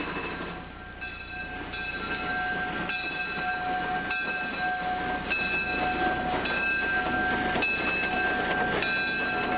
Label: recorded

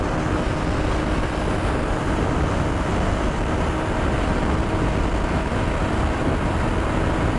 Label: recorded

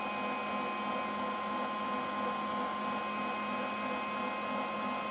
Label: recorded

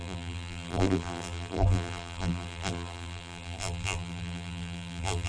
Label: remade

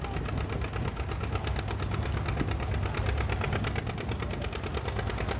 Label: recorded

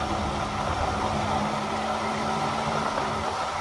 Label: recorded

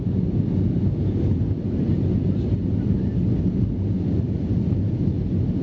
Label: recorded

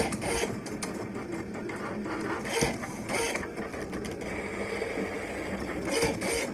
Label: recorded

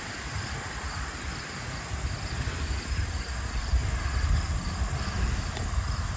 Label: recorded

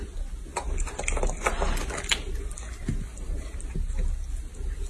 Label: recorded